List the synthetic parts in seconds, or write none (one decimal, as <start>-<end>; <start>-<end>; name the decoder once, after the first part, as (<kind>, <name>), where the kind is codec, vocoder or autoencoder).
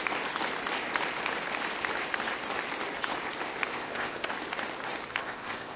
3.7-4.3 (codec, ZipCodec); 5.2-5.8